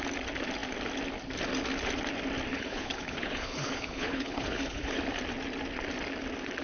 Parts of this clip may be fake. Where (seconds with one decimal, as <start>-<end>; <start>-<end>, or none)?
2.5-5.0